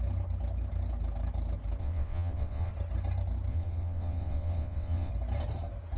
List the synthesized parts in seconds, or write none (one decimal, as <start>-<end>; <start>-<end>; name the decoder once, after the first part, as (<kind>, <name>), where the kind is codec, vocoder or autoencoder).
1.8-2.7 (vocoder, WaveNeXt); 3.5-5.1